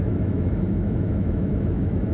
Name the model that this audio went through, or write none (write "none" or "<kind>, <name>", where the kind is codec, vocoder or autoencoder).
autoencoder, DAC-VAE